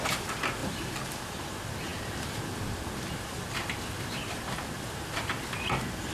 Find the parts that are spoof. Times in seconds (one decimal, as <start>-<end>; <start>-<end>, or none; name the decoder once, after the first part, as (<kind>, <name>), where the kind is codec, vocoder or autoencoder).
0.6-1.4 (vocoder, BigVGAN v2)